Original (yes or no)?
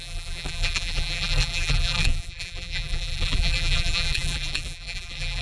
no